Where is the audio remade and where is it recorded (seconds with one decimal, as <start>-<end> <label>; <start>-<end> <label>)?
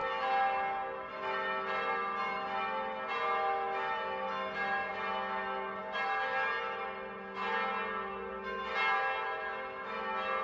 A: 0.0-10.4 recorded